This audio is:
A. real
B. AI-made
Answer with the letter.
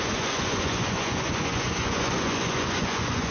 B